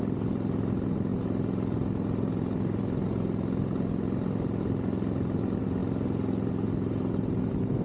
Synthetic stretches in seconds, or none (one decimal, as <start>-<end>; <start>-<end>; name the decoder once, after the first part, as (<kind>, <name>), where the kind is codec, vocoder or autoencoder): none